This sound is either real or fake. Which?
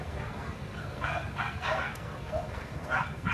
fake